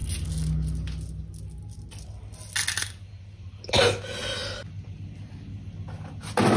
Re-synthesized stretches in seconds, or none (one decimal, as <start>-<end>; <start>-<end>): none